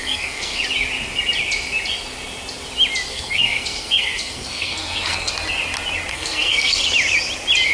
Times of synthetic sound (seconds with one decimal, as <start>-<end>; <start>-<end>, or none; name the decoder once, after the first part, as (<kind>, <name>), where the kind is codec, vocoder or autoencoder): 0.0-0.6 (codec, SNAC); 3.1-5.3; 6.1-6.8